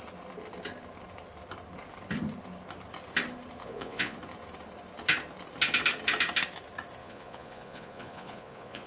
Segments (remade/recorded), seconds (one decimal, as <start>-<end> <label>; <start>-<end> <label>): 0.0-3.6 recorded; 3.6-4.2 remade; 4.2-7.0 recorded; 7.0-8.9 remade